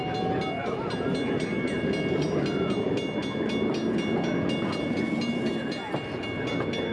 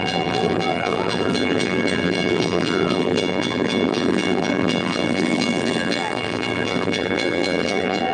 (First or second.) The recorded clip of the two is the first